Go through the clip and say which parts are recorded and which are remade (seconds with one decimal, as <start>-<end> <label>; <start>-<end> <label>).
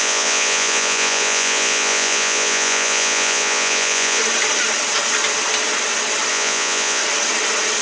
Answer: 0.0-4.2 remade; 4.2-6.3 recorded; 6.3-7.0 remade; 7.0-7.8 recorded